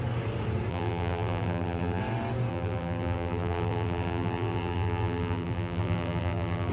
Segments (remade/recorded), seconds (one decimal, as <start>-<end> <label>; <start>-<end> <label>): 0.0-0.7 recorded; 0.7-2.0 remade; 2.0-2.5 recorded; 2.5-6.7 remade